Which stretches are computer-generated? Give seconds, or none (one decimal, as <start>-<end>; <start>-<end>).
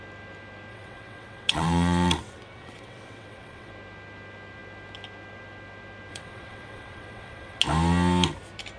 0.7-3.7; 6.1-7.6